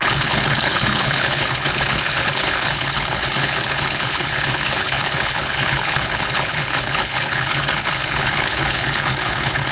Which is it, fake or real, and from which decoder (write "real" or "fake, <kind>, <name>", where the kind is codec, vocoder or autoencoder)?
fake, codec, HILCodec